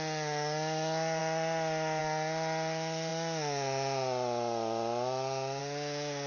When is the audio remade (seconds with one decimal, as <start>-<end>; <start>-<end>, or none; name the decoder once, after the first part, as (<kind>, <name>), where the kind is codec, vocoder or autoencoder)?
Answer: none